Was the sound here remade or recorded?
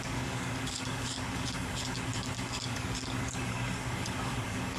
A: remade